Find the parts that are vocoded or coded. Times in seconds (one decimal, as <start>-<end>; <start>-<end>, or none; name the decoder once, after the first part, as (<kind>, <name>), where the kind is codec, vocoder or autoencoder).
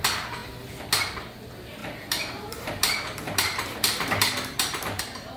1.8-5.0 (vocoder, BigVGAN v2)